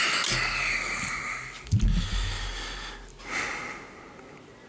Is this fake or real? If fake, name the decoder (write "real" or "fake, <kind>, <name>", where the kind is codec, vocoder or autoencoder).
real